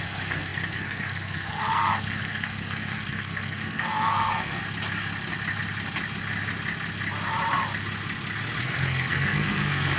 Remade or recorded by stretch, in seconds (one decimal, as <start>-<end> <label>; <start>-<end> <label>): 0.0-4.6 remade; 4.6-8.6 recorded; 8.6-10.0 remade